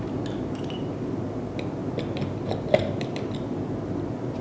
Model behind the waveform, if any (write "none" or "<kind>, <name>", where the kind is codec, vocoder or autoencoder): none